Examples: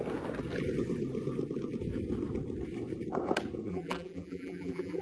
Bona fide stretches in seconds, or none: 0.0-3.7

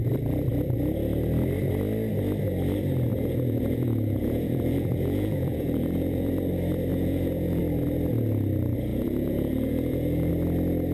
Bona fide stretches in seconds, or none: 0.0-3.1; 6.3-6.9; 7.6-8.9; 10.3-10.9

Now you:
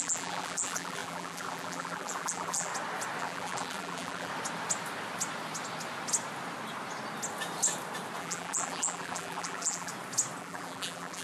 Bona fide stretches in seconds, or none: 2.7-3.2; 4.3-8.2; 9.9-10.4